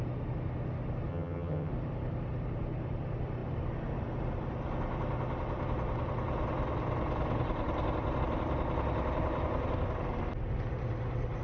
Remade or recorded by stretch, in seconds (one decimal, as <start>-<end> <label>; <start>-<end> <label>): 0.0-1.1 recorded; 1.1-1.7 remade; 1.7-11.4 recorded